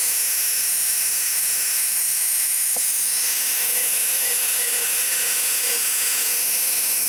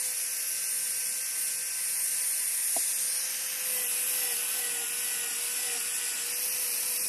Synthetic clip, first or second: first